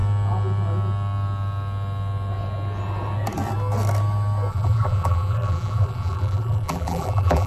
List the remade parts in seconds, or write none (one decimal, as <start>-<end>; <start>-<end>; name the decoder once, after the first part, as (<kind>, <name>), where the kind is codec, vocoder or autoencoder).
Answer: 4.5-7.5 (vocoder, BigVGAN v2)